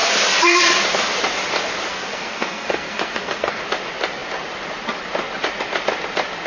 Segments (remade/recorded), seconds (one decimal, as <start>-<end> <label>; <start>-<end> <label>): 0.0-1.9 recorded; 1.9-3.6 remade; 3.6-6.5 recorded